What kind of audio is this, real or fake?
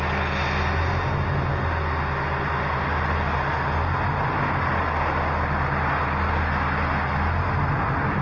real